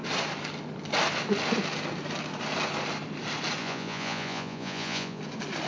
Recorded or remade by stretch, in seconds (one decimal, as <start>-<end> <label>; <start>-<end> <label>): 0.0-3.6 recorded; 3.6-5.2 remade; 5.2-5.7 recorded